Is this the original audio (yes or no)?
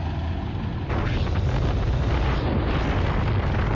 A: yes